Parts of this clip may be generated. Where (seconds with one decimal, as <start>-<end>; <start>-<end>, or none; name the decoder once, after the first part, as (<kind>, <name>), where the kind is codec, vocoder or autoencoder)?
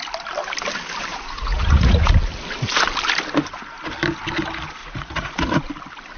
1.1-2.1 (vocoder, Vocos); 4.8-5.7